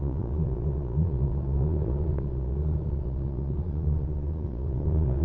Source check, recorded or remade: remade